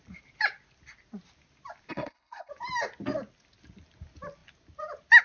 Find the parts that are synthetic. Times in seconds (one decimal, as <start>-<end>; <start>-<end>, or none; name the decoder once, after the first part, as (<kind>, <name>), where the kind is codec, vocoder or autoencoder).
1.9-2.5 (codec, HILCodec)